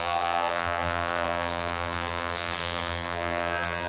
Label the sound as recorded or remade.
remade